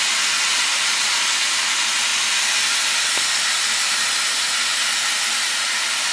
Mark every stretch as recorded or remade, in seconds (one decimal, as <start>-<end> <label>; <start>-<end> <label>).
0.0-0.5 recorded; 0.5-1.1 remade; 1.1-6.1 recorded